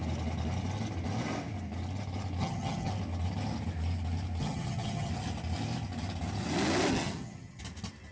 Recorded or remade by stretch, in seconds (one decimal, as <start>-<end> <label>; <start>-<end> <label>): 0.0-2.4 recorded; 2.4-2.9 remade; 2.9-4.4 recorded; 4.4-5.1 remade; 5.1-6.9 recorded; 6.9-7.6 remade; 7.6-8.1 recorded